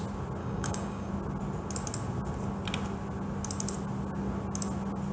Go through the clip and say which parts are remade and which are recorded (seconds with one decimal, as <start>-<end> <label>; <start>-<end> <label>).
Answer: 0.0-0.4 recorded; 0.4-1.1 remade; 1.1-5.1 recorded